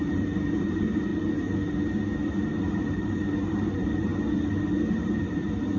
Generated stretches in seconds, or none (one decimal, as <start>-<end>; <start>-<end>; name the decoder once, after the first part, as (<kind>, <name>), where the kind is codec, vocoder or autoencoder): 0.0-1.1 (vocoder, BigVGAN v2); 2.6-4.1; 4.9-5.8